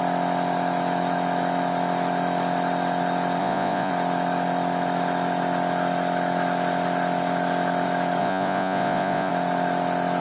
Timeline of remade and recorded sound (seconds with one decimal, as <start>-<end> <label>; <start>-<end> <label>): 0.0-3.4 recorded; 3.4-3.9 remade; 3.9-8.2 recorded; 8.2-9.3 remade; 9.3-10.2 recorded